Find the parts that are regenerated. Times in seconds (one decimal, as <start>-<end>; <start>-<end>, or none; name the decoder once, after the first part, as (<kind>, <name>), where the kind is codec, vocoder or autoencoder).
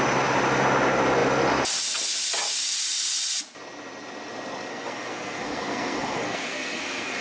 4.7-7.2 (codec, SNAC)